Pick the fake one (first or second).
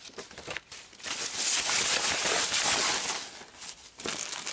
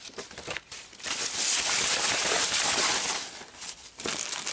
second